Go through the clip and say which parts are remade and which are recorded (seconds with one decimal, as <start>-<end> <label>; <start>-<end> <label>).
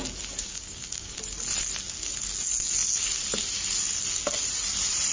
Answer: 0.0-0.4 recorded; 0.4-1.1 remade; 1.1-5.1 recorded